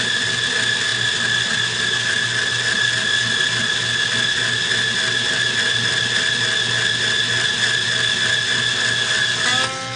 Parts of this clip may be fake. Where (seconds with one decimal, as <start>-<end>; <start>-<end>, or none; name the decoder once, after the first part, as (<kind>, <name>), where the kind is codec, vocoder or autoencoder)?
none